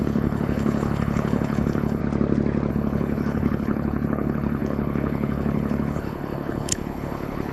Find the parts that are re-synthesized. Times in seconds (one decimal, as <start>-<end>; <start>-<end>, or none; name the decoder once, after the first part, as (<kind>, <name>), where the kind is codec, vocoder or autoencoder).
0.0-2.0 (codec, HILCodec); 2.7-7.5